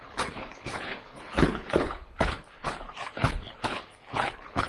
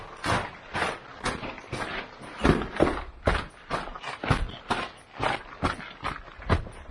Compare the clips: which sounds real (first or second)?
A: second